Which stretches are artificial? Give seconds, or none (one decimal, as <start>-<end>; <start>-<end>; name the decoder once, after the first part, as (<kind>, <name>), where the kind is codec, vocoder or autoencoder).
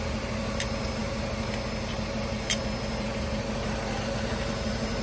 none